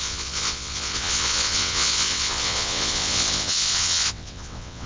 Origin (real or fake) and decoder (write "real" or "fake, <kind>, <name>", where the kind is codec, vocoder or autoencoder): fake, vocoder, WaveNeXt